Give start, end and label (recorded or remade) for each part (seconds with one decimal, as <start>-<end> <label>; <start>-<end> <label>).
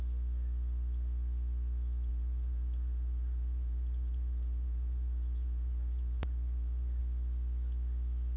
0.0-2.1 recorded; 2.1-7.0 remade; 7.0-8.4 recorded